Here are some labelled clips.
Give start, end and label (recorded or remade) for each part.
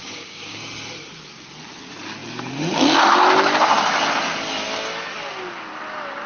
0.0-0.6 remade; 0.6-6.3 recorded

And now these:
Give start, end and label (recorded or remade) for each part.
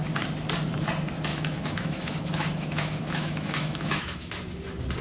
0.0-1.3 recorded; 1.3-4.3 remade; 4.3-5.0 recorded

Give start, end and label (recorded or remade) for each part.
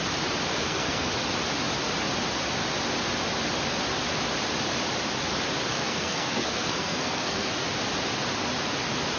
0.0-0.5 recorded; 0.5-1.1 remade; 1.1-5.7 recorded; 5.7-7.5 remade; 7.5-9.2 recorded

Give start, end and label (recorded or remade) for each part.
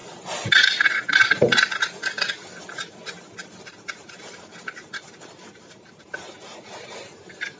0.0-3.6 recorded; 3.6-7.6 remade